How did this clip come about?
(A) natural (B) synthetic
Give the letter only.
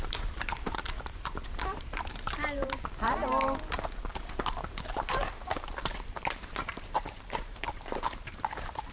B